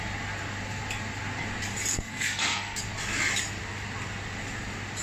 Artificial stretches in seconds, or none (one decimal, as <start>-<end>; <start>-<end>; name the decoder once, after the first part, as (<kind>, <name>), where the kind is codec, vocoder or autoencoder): 1.9-2.8 (codec, SNAC)